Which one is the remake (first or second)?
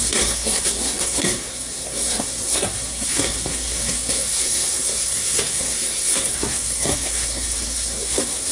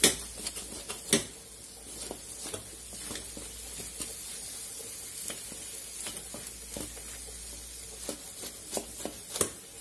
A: first